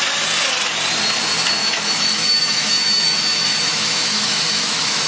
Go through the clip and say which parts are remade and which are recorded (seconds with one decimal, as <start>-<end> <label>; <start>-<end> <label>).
0.0-1.6 recorded; 1.6-5.1 remade